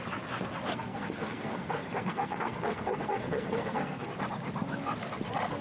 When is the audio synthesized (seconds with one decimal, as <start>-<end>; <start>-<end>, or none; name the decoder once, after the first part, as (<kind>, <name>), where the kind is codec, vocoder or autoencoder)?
0.7-4.1 (codec, SNAC)